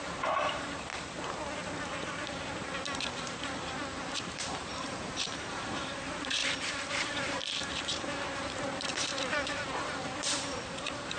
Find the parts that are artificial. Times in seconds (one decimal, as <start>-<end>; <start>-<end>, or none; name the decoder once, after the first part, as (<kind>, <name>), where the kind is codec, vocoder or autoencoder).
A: 0.0-0.9 (vocoder, BigVGAN v2); 3.1-11.2